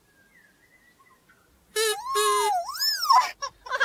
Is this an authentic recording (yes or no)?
yes